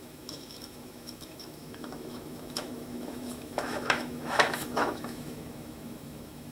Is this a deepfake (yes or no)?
yes